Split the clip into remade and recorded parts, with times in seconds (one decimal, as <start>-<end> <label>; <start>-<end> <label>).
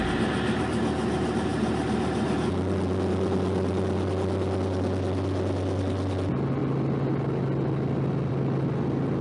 0.0-9.2 recorded